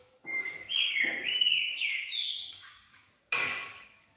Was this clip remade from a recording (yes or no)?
yes